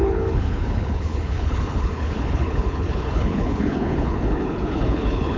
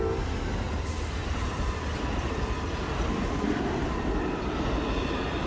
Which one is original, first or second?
second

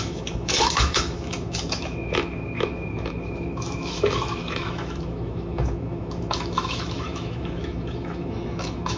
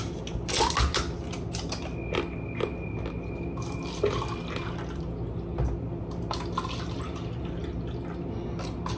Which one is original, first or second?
second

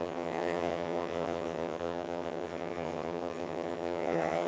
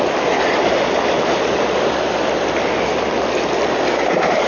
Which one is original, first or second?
second